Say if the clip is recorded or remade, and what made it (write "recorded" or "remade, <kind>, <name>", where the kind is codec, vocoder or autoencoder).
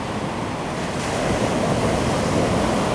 recorded